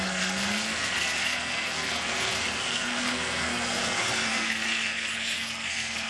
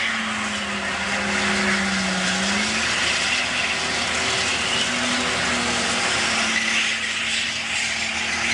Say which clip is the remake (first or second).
first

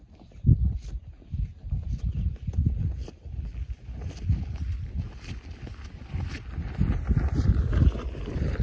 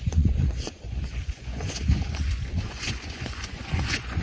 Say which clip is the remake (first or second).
second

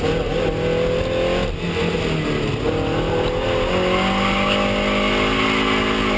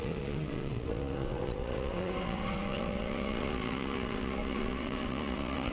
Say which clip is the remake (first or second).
second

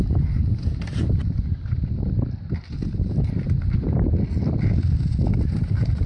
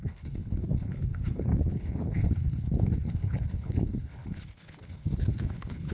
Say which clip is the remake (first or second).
second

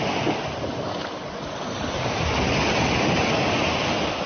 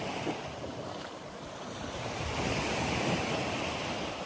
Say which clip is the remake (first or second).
second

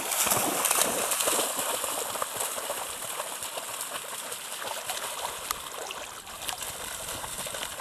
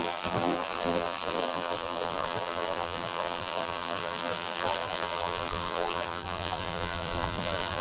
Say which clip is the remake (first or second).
second